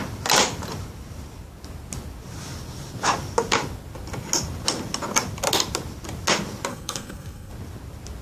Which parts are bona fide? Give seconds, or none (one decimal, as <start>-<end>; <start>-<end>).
0.0-6.7; 7.5-8.2